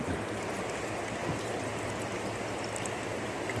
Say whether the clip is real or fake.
real